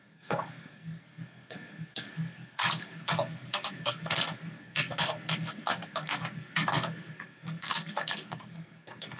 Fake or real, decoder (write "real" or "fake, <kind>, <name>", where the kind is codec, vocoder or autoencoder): fake, codec, SNAC